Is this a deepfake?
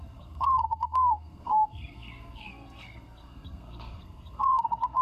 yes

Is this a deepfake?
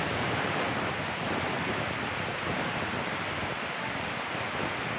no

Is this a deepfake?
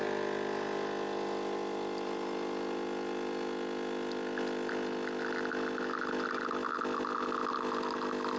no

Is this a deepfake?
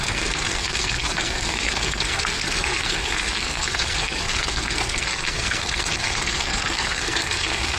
yes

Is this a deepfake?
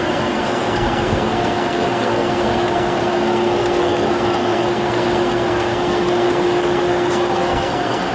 yes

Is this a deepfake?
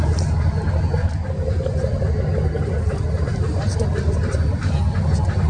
no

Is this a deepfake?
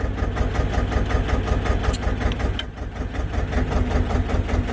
no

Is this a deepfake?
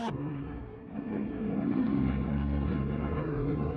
yes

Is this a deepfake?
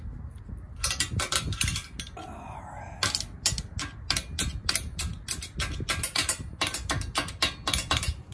no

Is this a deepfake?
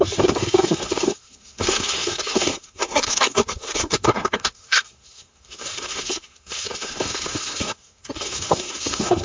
yes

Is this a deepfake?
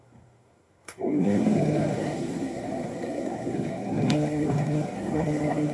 yes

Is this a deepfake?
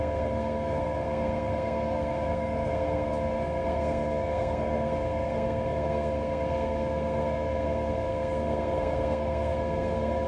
yes